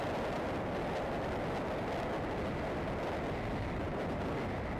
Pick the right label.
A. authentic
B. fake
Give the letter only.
A